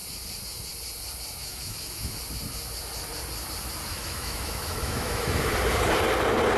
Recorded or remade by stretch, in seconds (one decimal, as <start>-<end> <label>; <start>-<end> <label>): 0.0-1.4 recorded; 1.4-2.2 remade; 2.2-3.9 recorded; 3.9-5.5 remade; 5.5-6.6 recorded